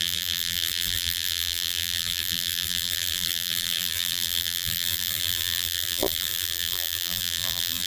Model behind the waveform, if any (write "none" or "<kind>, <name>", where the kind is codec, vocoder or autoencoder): vocoder, BigVGAN v2